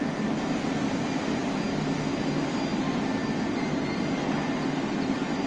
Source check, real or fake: real